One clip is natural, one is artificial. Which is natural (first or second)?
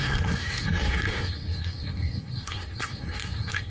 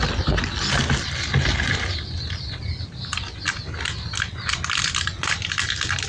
second